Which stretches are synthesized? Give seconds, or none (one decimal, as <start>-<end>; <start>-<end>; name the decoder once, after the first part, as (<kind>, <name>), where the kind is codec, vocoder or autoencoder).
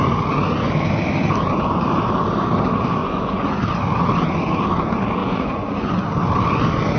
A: 3.0-3.6 (vocoder, Vocos); 5.2-5.9